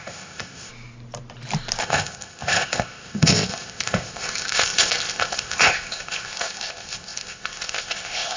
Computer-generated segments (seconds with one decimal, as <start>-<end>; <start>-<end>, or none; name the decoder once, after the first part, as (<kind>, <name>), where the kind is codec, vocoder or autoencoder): 0.0-0.7 (codec, ZipCodec); 1.8-8.4

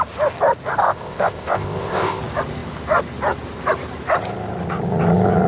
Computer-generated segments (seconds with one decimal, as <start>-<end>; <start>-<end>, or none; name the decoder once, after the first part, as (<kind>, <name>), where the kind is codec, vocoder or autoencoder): 0.8-2.2 (codec, ZipCodec)